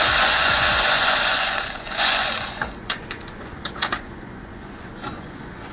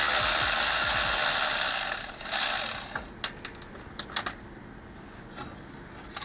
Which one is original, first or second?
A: second